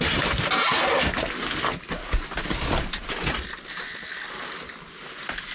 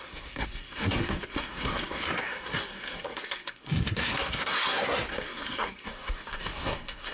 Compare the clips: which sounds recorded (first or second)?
first